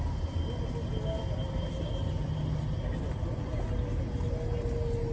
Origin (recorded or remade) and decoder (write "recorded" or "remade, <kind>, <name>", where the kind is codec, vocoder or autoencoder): recorded